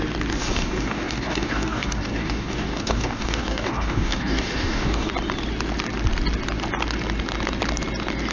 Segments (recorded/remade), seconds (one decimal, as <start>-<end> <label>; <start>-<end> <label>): 0.0-0.4 recorded; 0.4-5.1 remade; 5.1-8.3 recorded